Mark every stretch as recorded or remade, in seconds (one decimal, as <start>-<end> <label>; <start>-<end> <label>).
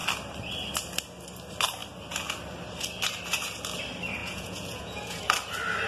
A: 0.0-4.2 recorded; 4.2-5.2 remade; 5.2-5.9 recorded